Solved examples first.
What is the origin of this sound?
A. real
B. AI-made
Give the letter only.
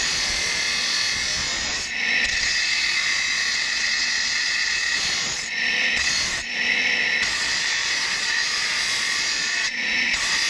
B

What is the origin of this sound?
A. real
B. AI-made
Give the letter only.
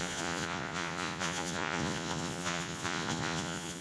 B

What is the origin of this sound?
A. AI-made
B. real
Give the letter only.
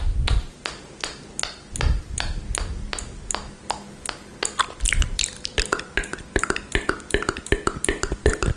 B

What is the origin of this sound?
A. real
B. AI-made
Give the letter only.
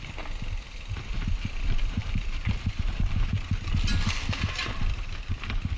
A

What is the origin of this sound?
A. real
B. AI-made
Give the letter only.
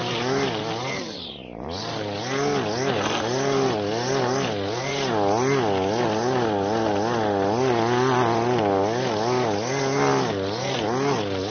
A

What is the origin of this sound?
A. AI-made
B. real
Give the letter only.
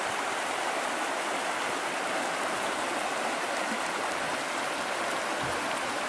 B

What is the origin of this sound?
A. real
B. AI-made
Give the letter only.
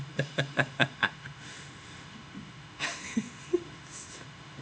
B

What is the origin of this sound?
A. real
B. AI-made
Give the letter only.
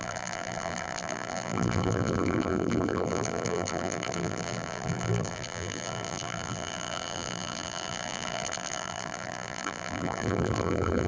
B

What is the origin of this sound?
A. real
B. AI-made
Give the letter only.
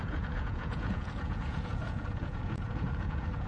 B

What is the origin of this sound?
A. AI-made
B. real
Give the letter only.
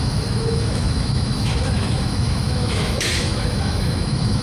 A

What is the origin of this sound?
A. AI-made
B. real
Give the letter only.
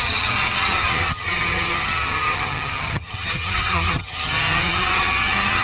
A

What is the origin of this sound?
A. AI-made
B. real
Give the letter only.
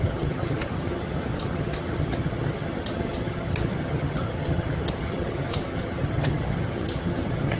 A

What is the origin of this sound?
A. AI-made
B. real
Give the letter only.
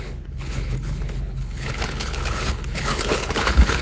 A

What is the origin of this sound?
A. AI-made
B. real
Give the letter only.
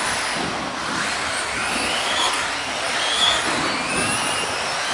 B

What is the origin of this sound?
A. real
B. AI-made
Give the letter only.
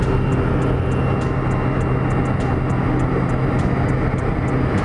A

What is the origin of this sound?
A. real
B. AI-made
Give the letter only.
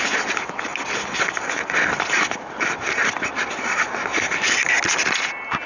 A